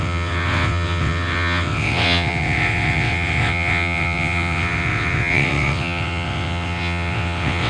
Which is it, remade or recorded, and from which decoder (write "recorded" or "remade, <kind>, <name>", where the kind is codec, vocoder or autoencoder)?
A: remade, vocoder, WaveNeXt